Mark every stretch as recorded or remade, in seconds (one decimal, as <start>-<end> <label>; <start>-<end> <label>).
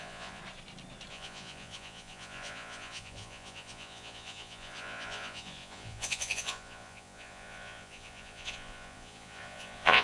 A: 0.0-0.4 remade; 0.4-1.1 recorded; 1.1-10.0 remade